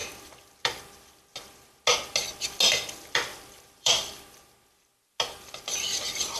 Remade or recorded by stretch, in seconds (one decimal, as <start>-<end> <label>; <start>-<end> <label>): 0.0-3.3 recorded; 3.3-4.4 remade; 4.4-6.4 recorded